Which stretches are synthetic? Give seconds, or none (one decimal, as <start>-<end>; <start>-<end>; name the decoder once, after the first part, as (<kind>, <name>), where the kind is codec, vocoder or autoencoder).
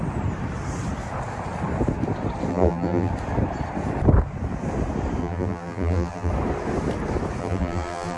2.5-3.1 (vocoder, BigVGAN v2); 5.2-6.3; 7.4-8.2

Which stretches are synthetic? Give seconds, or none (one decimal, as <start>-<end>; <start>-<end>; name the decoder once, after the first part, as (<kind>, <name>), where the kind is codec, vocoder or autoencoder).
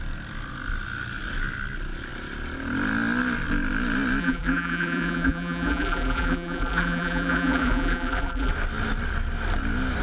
4.2-8.5 (vocoder, BigVGAN v2)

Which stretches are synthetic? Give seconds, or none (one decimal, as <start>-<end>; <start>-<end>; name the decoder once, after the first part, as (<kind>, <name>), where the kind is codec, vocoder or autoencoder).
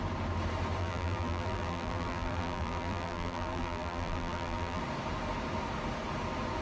0.8-4.8 (vocoder, BigVGAN v2)